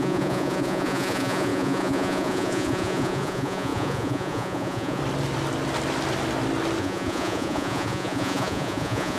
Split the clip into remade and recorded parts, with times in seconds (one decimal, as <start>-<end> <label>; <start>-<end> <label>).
0.0-5.0 remade; 5.0-6.8 recorded; 6.8-9.2 remade